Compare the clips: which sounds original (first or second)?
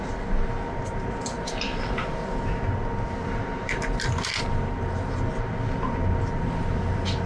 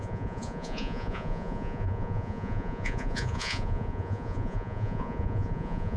first